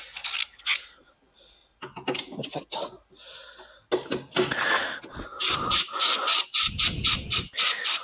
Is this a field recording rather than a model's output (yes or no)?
yes